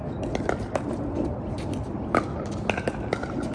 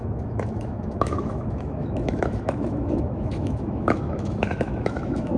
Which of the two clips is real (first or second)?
first